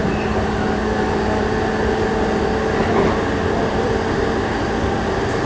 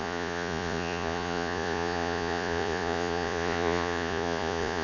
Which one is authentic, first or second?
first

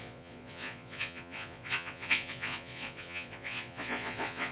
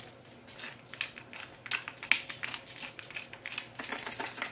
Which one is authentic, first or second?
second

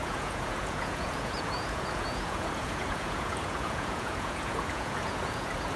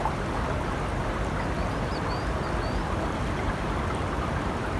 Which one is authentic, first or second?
second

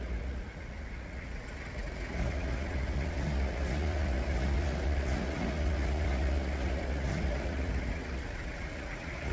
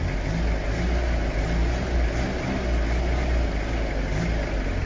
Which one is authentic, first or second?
second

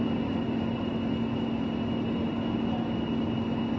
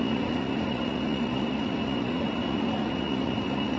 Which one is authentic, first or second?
first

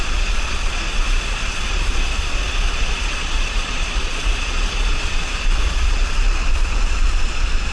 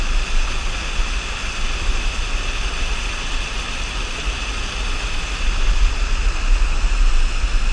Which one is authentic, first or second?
second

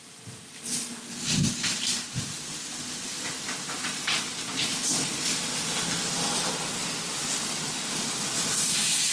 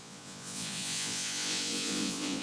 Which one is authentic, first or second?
first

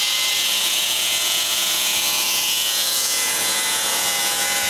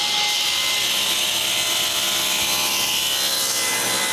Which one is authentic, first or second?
second